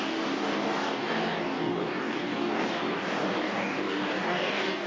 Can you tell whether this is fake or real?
fake